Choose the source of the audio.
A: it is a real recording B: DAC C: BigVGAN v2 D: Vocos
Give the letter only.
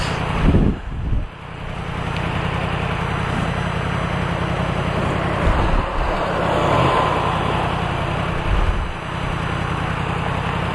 A